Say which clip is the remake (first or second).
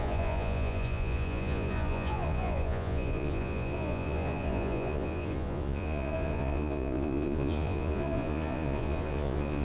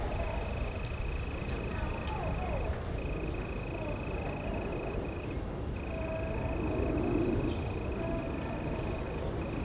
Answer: first